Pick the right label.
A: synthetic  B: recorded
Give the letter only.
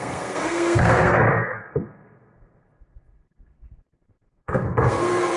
A